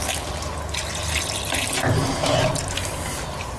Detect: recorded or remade recorded